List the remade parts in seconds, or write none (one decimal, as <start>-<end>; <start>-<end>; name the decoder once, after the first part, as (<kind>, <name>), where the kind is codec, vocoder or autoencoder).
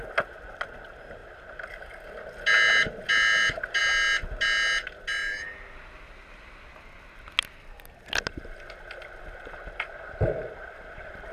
none